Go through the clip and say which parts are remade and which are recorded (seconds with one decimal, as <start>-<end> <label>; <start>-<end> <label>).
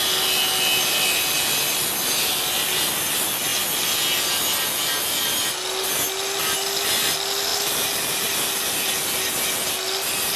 0.0-10.4 recorded